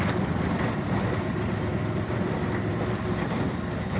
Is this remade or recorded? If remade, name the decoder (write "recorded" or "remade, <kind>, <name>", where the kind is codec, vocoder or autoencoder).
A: remade, vocoder, BigVGAN v2